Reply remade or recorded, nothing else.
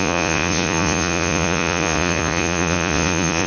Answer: remade